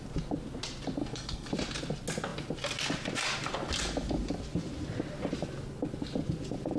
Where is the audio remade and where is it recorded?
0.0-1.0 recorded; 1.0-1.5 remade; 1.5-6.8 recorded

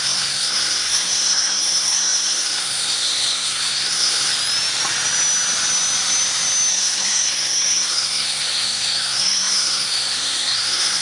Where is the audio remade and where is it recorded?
0.0-4.3 remade; 4.3-6.7 recorded; 6.7-11.0 remade

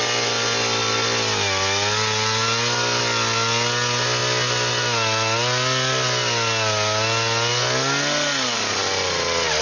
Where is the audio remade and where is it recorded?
0.0-9.6 recorded

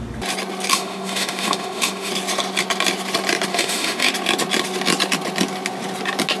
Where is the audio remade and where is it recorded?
0.0-0.7 recorded; 0.7-2.1 remade; 2.1-3.5 recorded; 3.5-4.1 remade; 4.1-6.4 recorded